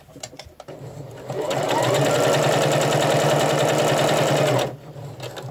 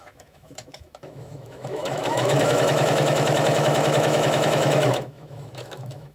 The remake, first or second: second